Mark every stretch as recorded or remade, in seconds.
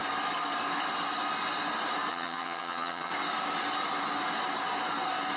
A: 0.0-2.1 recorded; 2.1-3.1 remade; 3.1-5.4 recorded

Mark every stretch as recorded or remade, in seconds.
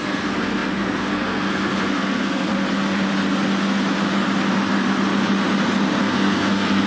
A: 0.0-2.5 remade; 2.5-6.0 recorded; 6.0-6.9 remade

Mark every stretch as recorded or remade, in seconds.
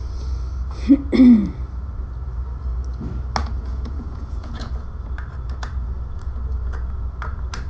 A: 0.0-3.4 recorded; 3.4-4.7 remade; 4.7-7.7 recorded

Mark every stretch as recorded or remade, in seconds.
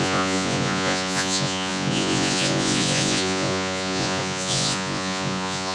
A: 0.0-5.7 remade